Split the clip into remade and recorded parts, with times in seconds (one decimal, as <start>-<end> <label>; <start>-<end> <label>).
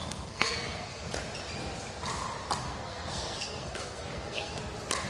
0.0-1.1 remade; 1.1-2.6 recorded; 2.6-4.6 remade; 4.6-5.1 recorded